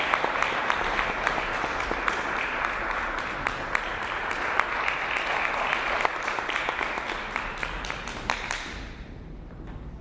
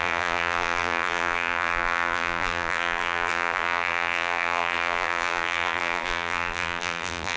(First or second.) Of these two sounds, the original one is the first